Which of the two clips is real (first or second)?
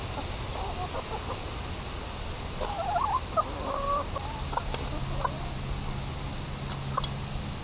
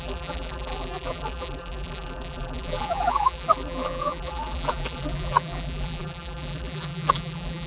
first